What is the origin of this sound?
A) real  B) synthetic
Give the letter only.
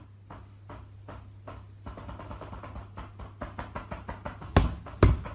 A